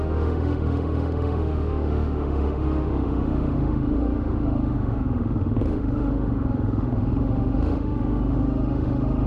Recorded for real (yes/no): no